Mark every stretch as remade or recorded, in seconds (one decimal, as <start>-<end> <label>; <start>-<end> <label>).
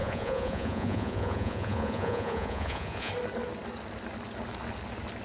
0.0-3.1 remade; 3.1-5.2 recorded